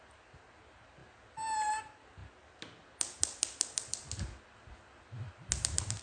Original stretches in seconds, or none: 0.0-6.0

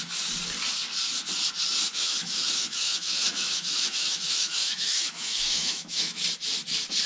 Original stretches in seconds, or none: 0.0-1.9; 6.2-7.1

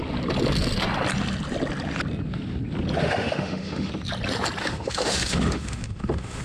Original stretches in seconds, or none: 0.0-3.0; 3.9-4.6

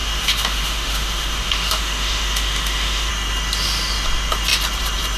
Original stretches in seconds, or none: 3.1-5.2

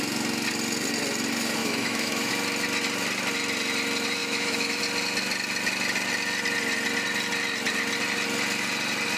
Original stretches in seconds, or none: 0.0-1.6; 2.3-4.2; 4.8-9.2

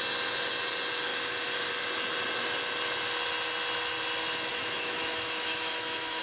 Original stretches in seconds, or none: 0.0-1.1; 1.7-4.5

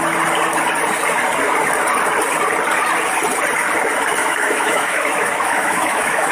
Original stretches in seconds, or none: 0.0-4.2